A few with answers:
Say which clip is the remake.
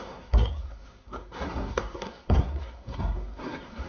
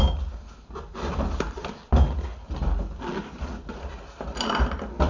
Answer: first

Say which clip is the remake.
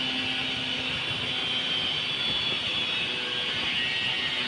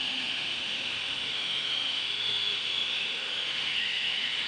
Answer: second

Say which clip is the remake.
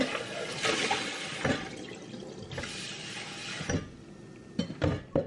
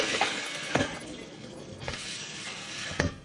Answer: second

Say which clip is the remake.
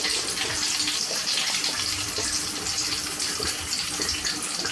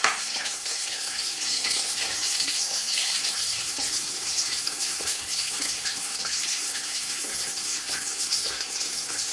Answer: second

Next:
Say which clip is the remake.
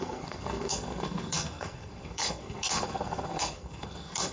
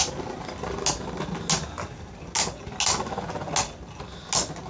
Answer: first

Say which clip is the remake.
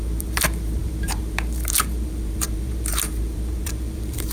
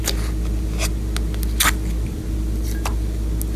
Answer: first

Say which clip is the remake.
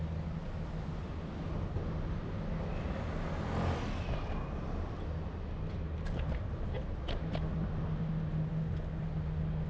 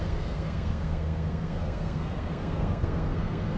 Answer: second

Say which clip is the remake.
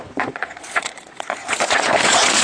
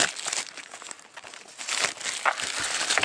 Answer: first